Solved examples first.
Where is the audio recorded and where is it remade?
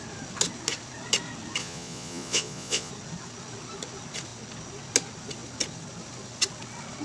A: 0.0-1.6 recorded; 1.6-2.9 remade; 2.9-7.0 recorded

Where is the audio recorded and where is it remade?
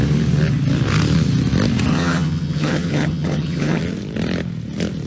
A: 0.0-1.9 recorded; 1.9-3.8 remade; 3.8-5.1 recorded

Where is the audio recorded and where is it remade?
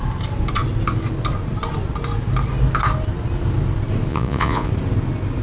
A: 0.0-4.1 recorded; 4.1-4.7 remade; 4.7-5.4 recorded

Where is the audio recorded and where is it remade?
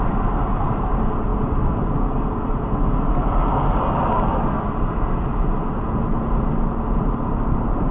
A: 0.0-7.9 recorded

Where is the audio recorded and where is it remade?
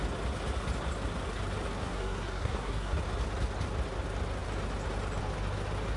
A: 0.0-1.8 recorded; 1.8-3.0 remade; 3.0-6.0 recorded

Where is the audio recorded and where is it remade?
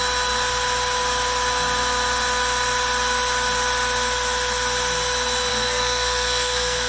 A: 0.0-5.5 recorded; 5.5-6.9 remade